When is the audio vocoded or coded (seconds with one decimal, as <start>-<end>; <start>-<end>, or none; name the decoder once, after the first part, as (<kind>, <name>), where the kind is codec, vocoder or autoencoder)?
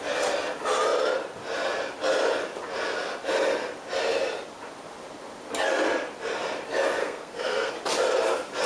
7.0-7.7 (codec, SNAC)